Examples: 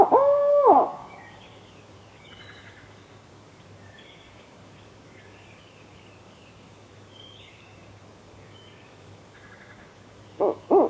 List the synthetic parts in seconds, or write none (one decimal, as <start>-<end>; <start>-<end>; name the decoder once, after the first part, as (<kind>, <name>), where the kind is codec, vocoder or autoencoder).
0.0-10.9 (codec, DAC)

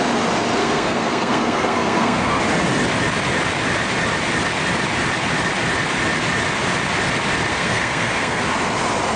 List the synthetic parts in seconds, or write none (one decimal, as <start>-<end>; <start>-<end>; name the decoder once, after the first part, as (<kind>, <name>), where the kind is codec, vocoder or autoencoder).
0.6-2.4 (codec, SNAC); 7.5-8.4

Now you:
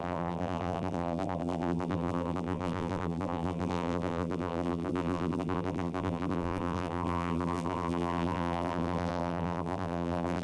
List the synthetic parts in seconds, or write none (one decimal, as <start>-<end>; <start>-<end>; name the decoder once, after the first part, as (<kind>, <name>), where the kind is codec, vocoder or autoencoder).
0.0-10.4 (vocoder, BigVGAN v2)